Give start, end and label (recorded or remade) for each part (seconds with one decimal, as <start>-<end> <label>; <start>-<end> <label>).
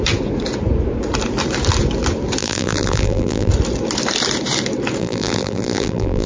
0.0-2.4 recorded; 2.4-3.5 remade; 3.5-5.0 recorded; 5.0-6.3 remade